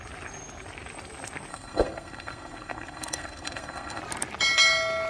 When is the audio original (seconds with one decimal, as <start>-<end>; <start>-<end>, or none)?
0.0-1.5; 4.0-5.1